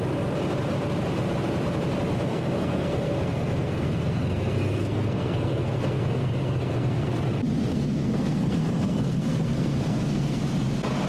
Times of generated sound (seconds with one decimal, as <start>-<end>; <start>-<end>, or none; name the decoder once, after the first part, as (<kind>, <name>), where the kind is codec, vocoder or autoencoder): 2.3-7.2 (codec, SNAC); 7.7-10.4